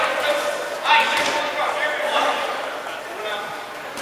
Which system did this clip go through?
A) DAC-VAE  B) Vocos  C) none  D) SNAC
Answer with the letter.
C